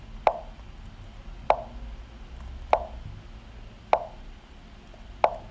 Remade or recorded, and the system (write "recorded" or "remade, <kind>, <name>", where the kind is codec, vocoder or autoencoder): recorded